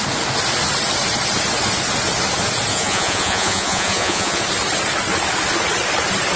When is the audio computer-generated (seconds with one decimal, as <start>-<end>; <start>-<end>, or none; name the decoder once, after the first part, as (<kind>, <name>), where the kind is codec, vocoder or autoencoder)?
2.7-4.4 (vocoder, Vocos)